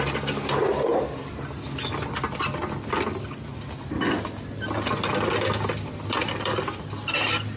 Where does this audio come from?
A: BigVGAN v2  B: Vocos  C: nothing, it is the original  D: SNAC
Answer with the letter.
C